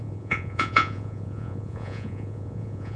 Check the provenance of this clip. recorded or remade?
remade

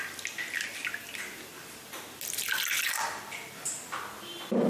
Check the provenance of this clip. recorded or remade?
recorded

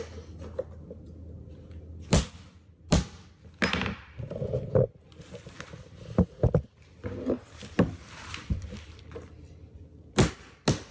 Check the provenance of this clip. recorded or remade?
recorded